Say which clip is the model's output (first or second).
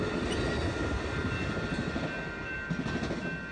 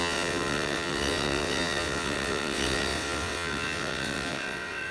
second